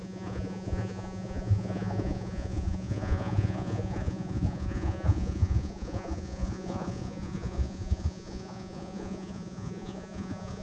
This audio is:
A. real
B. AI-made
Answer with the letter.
B